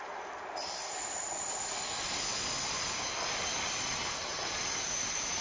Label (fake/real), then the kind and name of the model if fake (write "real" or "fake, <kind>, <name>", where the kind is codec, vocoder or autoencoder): real